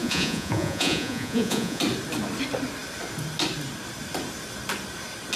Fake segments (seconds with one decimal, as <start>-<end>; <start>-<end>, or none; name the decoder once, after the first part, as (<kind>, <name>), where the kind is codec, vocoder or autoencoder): 0.0-1.8 (vocoder, Vocos)

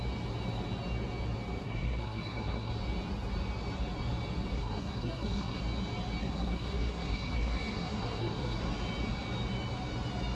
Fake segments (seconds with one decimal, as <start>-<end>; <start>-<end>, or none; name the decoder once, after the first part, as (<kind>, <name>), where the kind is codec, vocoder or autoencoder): 1.6-2.7 (codec, SNAC); 4.5-5.6; 6.2-8.6